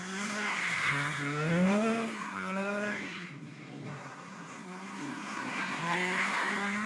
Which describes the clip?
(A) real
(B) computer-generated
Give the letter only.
B